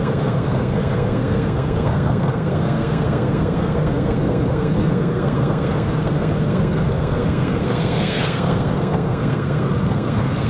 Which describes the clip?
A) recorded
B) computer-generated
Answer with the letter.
B